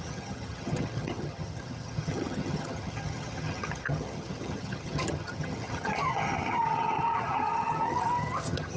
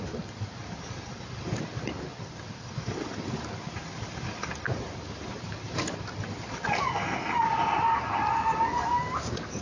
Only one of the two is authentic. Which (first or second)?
second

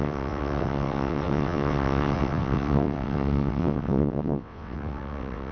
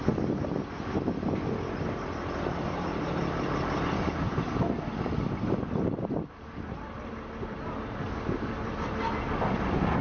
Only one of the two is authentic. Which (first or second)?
second